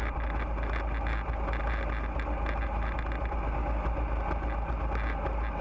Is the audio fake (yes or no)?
no